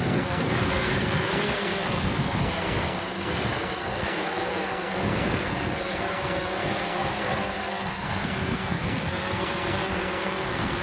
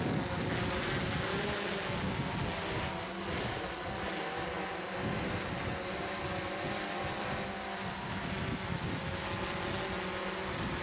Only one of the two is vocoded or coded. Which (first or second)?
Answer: first